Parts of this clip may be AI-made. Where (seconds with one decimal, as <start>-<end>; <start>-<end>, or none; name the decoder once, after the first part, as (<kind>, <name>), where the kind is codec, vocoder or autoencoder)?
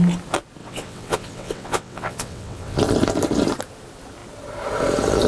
0.6-2.8 (vocoder, WaveNeXt)